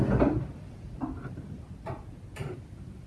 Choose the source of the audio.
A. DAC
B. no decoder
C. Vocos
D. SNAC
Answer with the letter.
B